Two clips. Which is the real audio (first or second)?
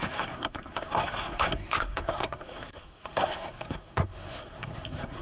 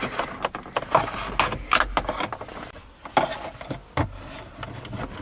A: second